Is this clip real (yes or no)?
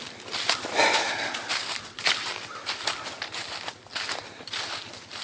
yes